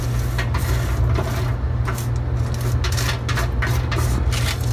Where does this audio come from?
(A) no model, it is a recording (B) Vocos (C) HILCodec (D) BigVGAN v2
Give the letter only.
A